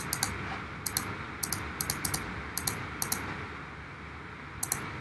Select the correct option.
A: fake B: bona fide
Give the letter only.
B